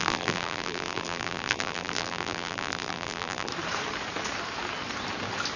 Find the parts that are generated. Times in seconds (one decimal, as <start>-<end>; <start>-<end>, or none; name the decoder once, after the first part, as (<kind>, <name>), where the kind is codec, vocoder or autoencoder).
0.0-3.5 (vocoder, BigVGAN v2)